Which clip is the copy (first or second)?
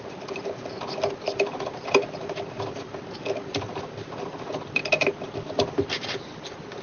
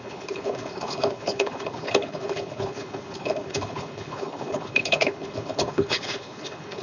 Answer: second